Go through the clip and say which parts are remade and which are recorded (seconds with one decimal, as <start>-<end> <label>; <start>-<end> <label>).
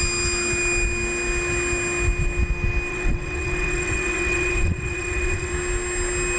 0.0-2.9 recorded; 2.9-5.5 remade; 5.5-6.4 recorded